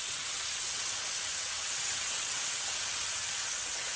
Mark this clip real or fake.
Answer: fake